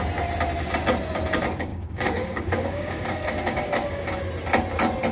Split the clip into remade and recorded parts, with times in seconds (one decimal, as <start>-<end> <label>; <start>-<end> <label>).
0.0-1.7 recorded; 1.7-4.2 remade; 4.2-5.1 recorded